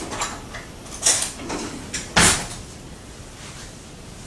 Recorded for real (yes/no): yes